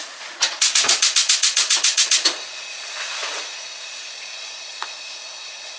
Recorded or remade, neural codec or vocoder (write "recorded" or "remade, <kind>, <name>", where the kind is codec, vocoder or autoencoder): remade, vocoder, Vocos